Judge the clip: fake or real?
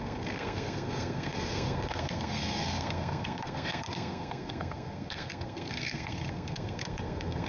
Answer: fake